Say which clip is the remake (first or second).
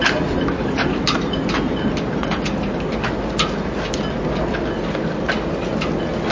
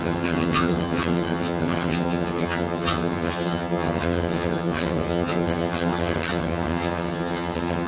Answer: second